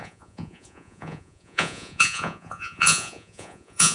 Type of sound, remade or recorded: remade